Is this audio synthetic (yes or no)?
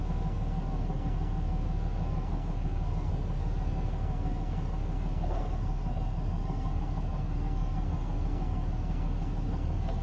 yes